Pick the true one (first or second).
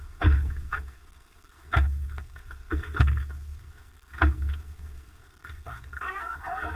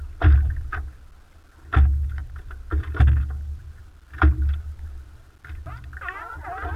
second